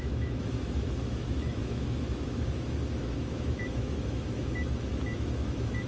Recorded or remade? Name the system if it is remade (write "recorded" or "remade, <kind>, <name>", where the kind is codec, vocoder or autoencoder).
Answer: remade, autoencoder, DAC-VAE